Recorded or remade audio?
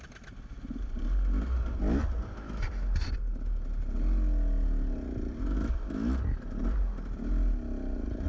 recorded